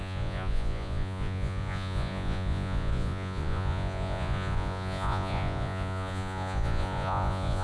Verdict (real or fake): fake